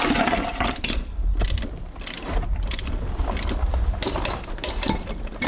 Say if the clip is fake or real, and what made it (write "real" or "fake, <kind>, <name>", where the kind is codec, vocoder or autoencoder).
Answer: real